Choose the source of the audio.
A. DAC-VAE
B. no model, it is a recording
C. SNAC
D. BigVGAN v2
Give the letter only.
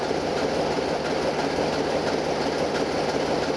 B